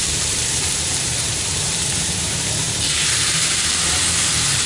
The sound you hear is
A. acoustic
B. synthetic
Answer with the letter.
B